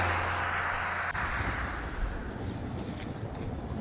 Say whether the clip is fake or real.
real